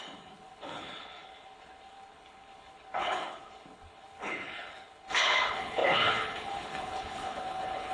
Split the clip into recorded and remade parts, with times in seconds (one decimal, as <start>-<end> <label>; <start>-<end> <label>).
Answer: 0.0-7.9 remade